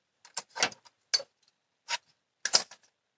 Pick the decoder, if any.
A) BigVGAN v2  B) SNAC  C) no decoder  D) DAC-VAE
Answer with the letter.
C